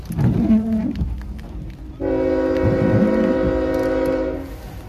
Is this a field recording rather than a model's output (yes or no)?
yes